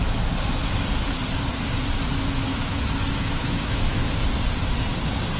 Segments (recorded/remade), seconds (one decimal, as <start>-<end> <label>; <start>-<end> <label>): 0.0-2.5 recorded; 2.5-4.1 remade; 4.1-5.4 recorded

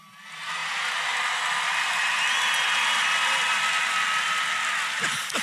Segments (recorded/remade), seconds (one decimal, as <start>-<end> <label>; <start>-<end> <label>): 0.0-5.4 recorded